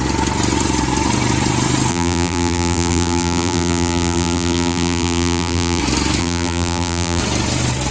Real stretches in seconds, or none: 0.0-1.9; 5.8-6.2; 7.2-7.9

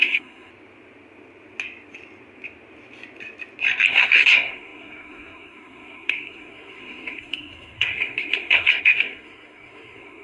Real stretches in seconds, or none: 0.5-3.9

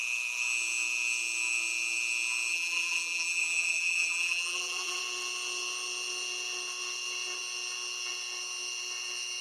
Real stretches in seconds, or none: 0.0-2.5; 5.0-9.4

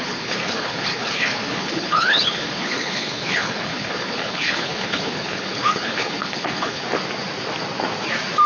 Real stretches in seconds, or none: 6.8-8.5